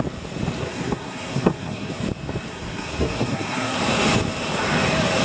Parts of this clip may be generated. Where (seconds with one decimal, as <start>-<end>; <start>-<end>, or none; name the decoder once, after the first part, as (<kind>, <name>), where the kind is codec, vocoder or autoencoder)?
0.6-1.9 (codec, SNAC); 2.5-3.8